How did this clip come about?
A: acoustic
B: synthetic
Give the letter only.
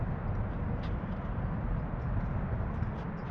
A